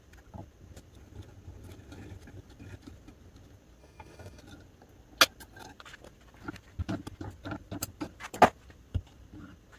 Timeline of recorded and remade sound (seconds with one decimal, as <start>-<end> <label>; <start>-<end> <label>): 0.0-3.8 recorded; 3.8-4.4 remade; 4.4-9.8 recorded